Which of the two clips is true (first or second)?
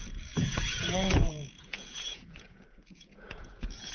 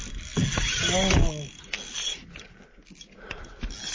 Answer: second